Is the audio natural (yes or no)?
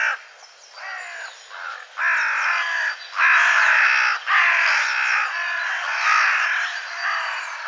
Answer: yes